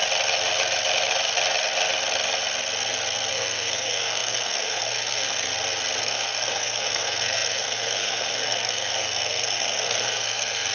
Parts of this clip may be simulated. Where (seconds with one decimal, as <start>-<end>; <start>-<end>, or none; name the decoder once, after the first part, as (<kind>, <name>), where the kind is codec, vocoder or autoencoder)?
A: 3.3-5.5 (codec, SNAC); 6.0-10.7